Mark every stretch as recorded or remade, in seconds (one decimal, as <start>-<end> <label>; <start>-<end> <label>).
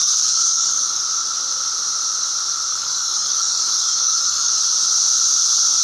0.0-1.0 remade; 1.0-2.7 recorded; 2.7-4.6 remade; 4.6-5.8 recorded